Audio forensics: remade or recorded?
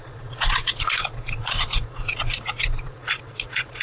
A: remade